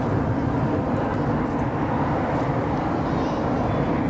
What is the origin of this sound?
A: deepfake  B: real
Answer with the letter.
B